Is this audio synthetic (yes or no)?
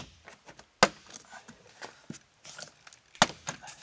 no